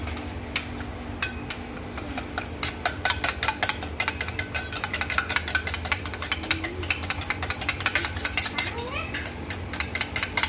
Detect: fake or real real